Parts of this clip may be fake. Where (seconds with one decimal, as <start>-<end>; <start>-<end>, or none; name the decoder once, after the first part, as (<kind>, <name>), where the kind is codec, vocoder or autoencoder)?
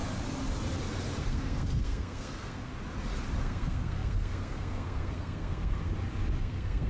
1.2-2.7 (codec, SNAC); 3.4-5.9; 6.4-6.9